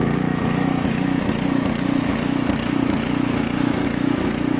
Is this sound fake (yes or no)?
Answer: yes